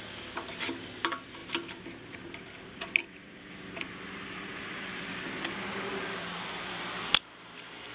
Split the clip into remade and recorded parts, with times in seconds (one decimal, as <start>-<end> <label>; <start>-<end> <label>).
0.0-7.9 recorded